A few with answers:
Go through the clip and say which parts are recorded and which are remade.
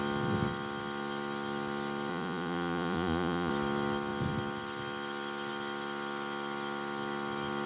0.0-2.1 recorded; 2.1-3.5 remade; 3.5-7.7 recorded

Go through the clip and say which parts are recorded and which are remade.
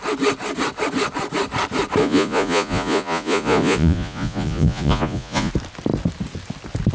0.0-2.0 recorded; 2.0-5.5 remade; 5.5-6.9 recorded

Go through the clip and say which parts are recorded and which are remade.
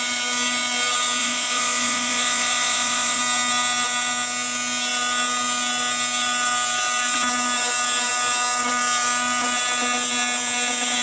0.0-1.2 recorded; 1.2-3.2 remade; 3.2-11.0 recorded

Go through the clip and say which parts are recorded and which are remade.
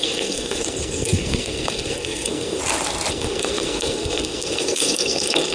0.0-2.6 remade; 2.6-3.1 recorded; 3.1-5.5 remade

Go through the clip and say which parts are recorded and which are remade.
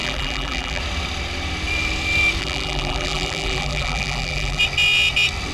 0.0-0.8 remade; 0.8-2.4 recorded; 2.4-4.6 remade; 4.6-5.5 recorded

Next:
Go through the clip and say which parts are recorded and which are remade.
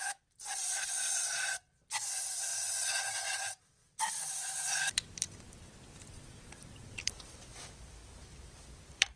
0.0-2.5 remade; 2.5-3.6 recorded; 3.6-8.0 remade; 8.0-8.6 recorded; 8.6-9.2 remade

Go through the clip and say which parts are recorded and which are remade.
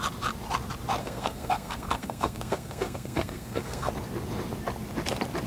0.0-1.0 recorded; 1.0-3.9 remade; 3.9-5.5 recorded